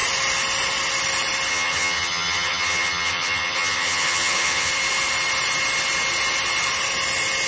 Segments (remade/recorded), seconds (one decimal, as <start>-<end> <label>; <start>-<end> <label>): 0.0-1.5 recorded; 1.5-4.7 remade; 4.7-7.5 recorded